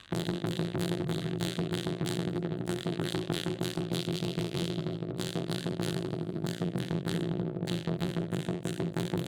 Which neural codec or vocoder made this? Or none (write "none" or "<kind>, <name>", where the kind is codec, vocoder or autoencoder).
vocoder, BigVGAN v2